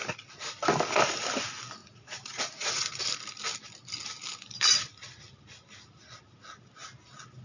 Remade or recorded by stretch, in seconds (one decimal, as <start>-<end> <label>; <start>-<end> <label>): 0.0-1.8 recorded; 1.8-3.0 remade; 3.0-7.4 recorded

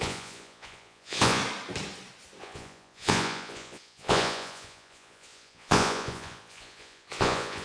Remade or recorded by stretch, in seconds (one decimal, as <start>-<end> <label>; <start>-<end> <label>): 0.0-1.4 remade; 1.4-2.4 recorded; 2.4-7.6 remade